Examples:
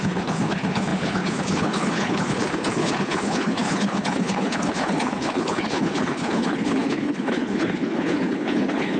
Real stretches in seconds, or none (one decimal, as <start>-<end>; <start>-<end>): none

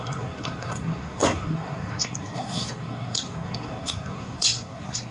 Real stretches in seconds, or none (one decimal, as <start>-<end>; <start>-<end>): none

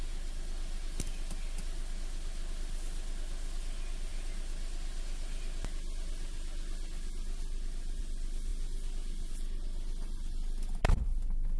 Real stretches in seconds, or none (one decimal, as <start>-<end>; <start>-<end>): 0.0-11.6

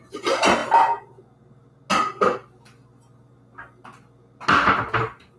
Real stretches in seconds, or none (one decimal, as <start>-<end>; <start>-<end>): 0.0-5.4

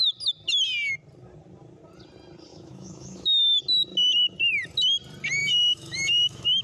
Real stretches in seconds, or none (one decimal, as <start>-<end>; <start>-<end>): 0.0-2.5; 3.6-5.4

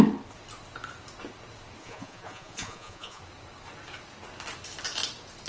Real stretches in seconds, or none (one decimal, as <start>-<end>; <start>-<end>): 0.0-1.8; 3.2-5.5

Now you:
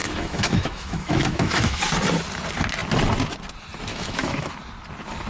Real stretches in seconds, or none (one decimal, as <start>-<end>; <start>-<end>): 1.8-3.9; 4.5-5.3

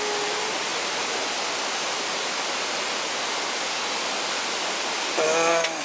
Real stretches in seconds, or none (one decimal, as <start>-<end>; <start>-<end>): 0.0-5.8